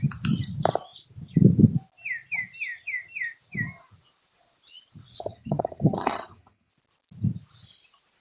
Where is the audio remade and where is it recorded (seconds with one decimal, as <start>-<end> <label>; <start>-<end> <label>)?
0.0-5.1 recorded; 5.1-6.7 remade; 6.7-8.2 recorded